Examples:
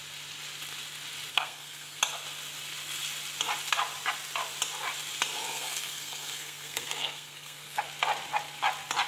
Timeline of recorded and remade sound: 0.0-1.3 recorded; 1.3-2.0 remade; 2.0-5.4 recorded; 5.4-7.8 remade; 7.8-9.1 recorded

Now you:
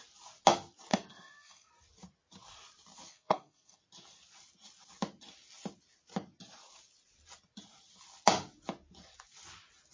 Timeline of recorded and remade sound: 0.0-0.9 recorded; 0.9-1.7 remade; 1.7-3.1 recorded; 3.1-3.8 remade; 3.8-9.9 recorded

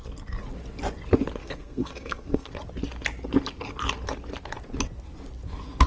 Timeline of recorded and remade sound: 0.0-1.4 recorded; 1.4-2.5 remade; 2.5-5.9 recorded

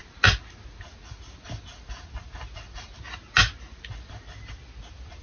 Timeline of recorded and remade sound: 0.0-5.2 recorded

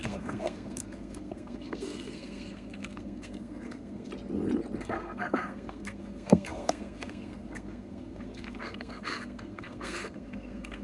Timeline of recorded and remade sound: 0.0-4.1 remade; 4.1-4.8 recorded; 4.8-10.8 remade

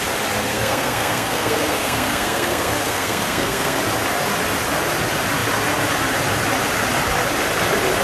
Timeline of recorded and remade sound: 0.0-0.5 recorded; 0.5-3.8 remade; 3.8-8.0 recorded

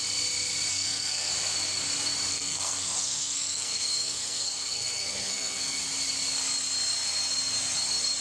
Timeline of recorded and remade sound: 0.0-0.7 recorded; 0.7-1.3 remade; 1.3-2.3 recorded; 2.3-5.8 remade; 5.8-8.2 recorded